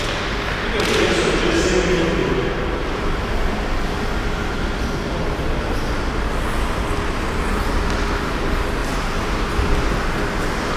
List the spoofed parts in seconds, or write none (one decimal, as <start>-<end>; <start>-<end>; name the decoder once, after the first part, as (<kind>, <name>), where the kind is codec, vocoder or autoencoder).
8.8-9.5 (vocoder, BigVGAN v2)